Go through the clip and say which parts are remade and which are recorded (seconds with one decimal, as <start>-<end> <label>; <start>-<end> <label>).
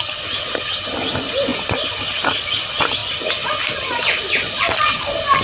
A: 0.0-5.4 recorded